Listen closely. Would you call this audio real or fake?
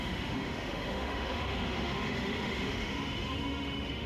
fake